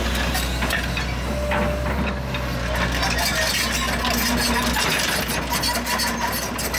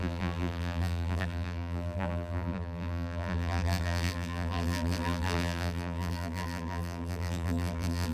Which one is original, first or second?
first